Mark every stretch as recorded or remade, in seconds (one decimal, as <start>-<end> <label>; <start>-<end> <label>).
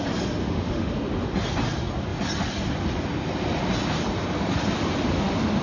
0.0-0.4 recorded; 0.4-0.9 remade; 0.9-5.6 recorded